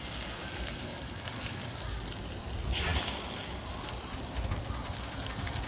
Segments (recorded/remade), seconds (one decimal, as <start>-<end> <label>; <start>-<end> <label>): 0.0-5.7 recorded